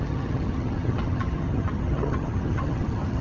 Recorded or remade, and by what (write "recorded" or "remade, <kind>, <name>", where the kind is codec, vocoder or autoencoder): remade, vocoder, HiFi-GAN